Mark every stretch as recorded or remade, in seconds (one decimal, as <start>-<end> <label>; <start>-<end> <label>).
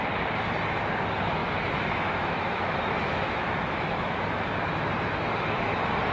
0.0-1.4 recorded; 1.4-4.5 remade; 4.5-6.1 recorded